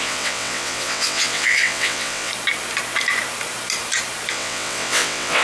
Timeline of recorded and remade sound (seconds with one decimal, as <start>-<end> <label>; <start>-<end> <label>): 0.0-2.3 remade; 2.3-4.3 recorded; 4.3-5.4 remade